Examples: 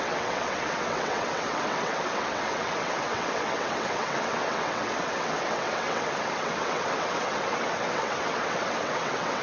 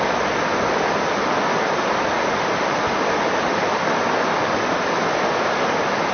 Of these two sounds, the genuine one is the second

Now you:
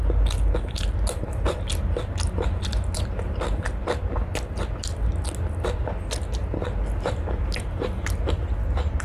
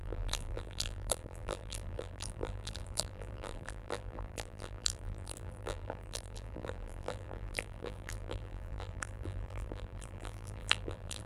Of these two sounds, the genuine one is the first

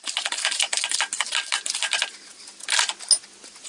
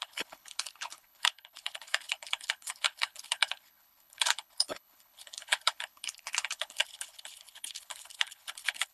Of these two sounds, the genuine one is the first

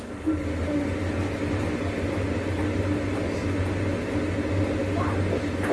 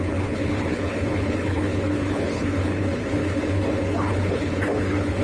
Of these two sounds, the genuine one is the first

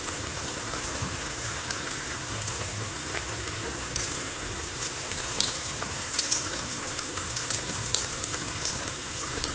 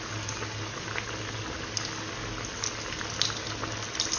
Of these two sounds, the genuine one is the second